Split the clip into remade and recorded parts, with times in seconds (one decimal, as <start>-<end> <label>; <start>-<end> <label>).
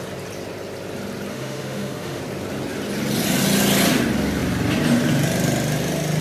0.0-1.3 recorded; 1.3-2.2 remade; 2.2-6.2 recorded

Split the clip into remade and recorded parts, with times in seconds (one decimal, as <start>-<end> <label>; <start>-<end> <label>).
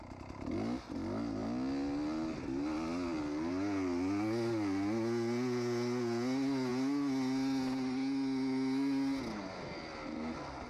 0.0-10.7 recorded